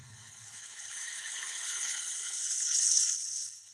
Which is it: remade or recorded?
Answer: remade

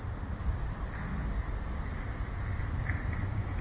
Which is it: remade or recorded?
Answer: recorded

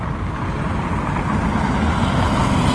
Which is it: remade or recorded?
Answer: recorded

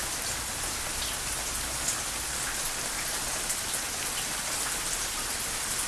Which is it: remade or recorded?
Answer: recorded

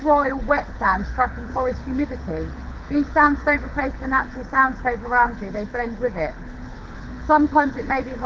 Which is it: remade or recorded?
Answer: remade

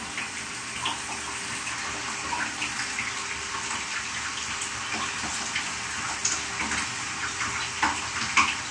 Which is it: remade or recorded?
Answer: recorded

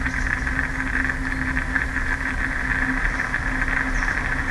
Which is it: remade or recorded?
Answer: recorded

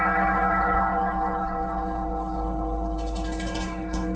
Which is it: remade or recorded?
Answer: remade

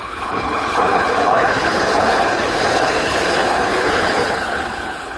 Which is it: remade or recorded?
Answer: remade